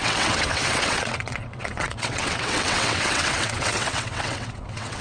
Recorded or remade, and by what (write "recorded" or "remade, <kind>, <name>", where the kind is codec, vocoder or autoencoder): remade, vocoder, WaveNeXt